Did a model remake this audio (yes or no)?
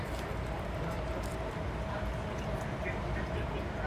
no